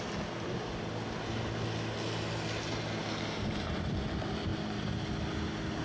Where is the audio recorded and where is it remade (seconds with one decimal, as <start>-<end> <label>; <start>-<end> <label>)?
0.0-5.8 recorded